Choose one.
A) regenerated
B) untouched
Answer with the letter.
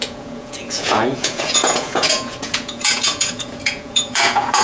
A